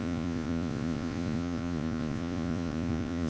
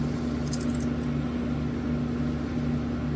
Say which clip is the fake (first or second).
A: first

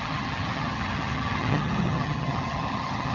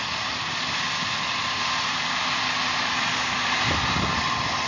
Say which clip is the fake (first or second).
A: first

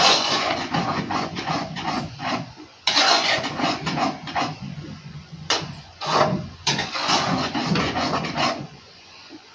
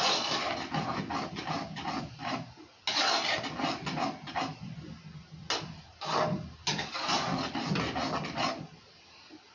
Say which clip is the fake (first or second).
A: first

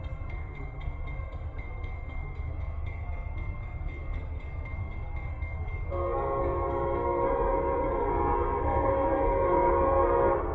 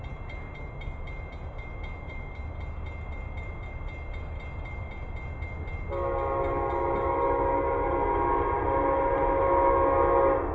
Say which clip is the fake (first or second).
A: first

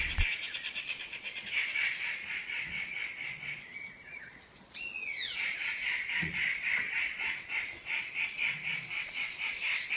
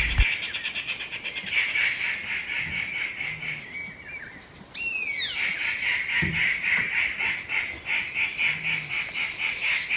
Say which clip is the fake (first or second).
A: first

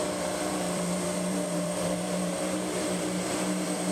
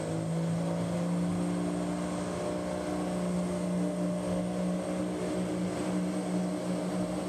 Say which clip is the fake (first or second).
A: first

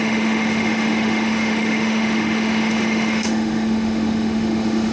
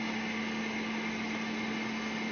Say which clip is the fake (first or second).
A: first